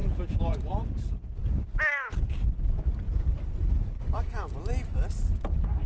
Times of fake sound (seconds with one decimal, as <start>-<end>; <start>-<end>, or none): 0.0-0.7